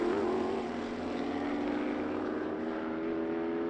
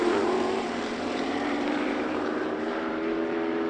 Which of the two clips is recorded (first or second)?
first